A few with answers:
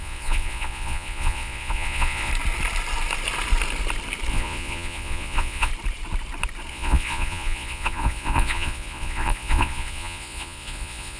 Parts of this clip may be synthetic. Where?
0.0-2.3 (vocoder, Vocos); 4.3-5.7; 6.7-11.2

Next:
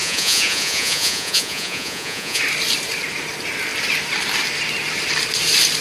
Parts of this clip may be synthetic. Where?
0.0-2.4 (vocoder, Vocos)

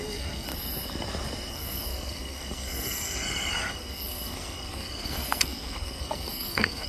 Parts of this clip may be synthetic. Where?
0.0-0.5 (codec, SNAC); 1.5-6.9

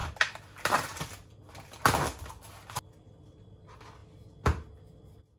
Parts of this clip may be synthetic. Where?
0.0-3.2 (vocoder, BigVGAN v2)

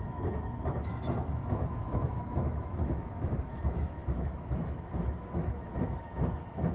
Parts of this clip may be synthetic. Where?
0.0-6.7 (autoencoder, DAC-VAE)

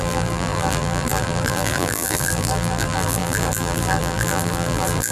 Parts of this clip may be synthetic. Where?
0.0-5.1 (vocoder, BigVGAN v2)